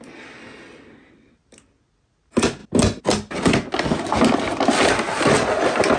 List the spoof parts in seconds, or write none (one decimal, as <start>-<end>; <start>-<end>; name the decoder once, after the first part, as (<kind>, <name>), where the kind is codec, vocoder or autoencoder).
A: none